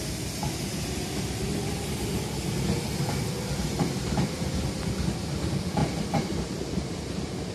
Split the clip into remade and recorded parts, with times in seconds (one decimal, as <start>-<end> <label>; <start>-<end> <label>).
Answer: 0.0-5.8 recorded; 5.8-6.5 remade; 6.5-7.5 recorded